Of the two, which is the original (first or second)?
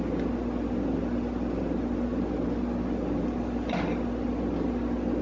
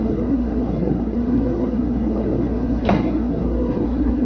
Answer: first